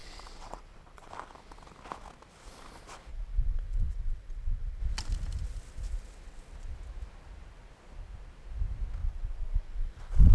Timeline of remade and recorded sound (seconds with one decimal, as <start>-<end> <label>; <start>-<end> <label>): 0.0-1.1 remade; 1.1-3.1 recorded; 3.1-4.8 remade; 4.8-9.0 recorded; 9.0-10.3 remade